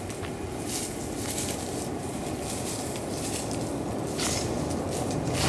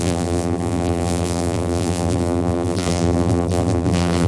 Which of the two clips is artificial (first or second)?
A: second